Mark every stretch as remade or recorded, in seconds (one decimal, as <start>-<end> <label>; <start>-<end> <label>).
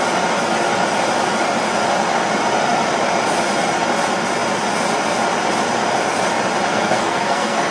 0.0-6.7 recorded; 6.7-7.7 remade